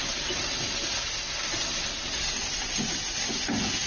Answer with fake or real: real